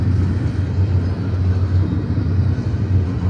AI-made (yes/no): no